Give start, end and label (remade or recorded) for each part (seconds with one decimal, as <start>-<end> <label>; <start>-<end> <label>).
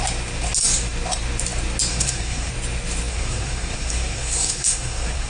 0.0-1.9 recorded; 1.9-2.5 remade; 2.5-3.1 recorded; 3.1-5.3 remade